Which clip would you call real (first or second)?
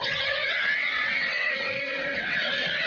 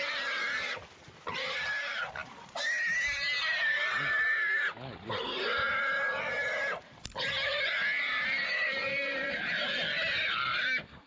second